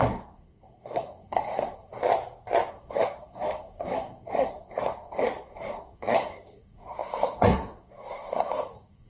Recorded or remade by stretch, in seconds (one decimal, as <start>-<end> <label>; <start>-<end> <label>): 0.0-2.0 remade; 2.0-2.7 recorded; 2.7-9.1 remade